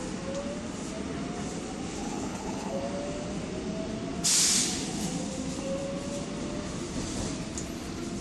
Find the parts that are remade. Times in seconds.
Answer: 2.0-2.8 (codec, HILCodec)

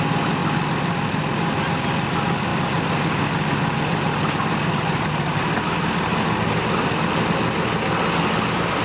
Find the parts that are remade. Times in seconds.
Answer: none

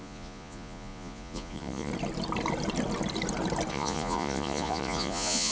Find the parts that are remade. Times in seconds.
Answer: 0.0-1.9 (vocoder, Vocos); 3.7-5.5

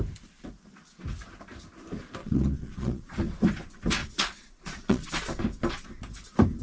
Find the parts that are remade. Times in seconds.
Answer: 2.2-3.2 (vocoder, Vocos); 4.0-5.1

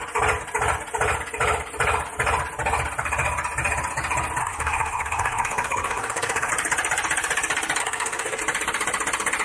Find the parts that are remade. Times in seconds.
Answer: 4.4-6.5 (codec, SNAC); 7.8-8.4

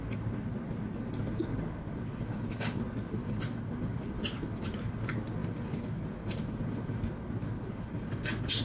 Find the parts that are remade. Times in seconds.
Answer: 3.2-4.9 (vocoder, BigVGAN v2); 5.4-8.2

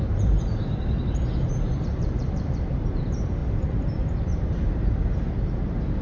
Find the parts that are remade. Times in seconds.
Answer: 0.0-3.4 (vocoder, BigVGAN v2); 4.0-6.0